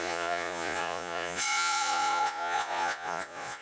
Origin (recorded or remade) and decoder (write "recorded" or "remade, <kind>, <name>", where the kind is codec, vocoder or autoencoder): remade, vocoder, Vocos